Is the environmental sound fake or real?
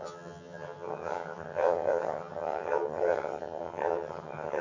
fake